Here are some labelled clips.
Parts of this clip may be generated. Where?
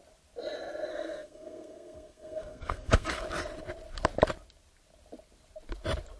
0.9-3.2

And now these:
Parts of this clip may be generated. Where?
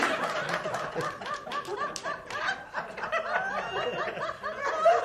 none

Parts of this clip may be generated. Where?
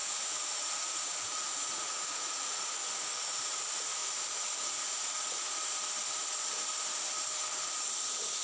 0.0-2.7